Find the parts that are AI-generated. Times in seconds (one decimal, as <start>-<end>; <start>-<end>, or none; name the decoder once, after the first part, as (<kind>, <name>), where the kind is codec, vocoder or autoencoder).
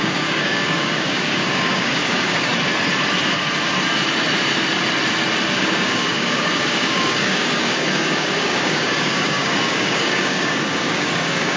0.0-2.5 (codec, DAC); 5.5-11.6